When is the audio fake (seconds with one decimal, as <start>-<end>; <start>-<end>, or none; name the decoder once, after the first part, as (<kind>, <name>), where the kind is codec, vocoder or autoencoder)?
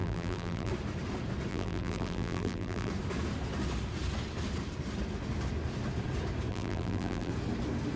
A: 0.0-0.7 (vocoder, BigVGAN v2); 1.5-2.9; 6.5-7.3